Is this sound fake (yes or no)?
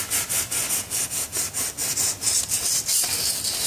no